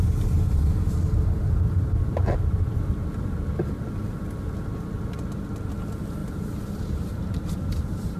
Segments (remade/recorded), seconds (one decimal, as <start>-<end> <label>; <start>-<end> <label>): 0.0-6.2 recorded; 6.2-8.2 remade